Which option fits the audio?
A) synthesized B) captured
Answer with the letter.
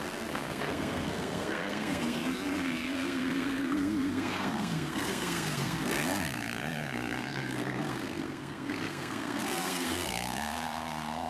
A